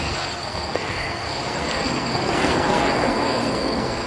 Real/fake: fake